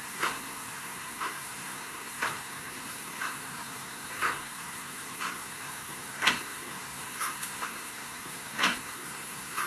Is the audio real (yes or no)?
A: no